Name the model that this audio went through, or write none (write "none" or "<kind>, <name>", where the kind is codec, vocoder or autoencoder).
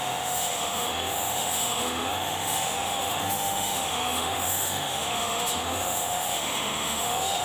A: autoencoder, DAC-VAE